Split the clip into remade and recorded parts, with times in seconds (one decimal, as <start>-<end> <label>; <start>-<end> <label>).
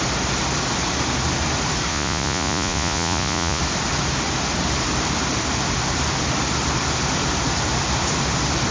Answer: 0.0-1.9 recorded; 1.9-3.6 remade; 3.6-8.7 recorded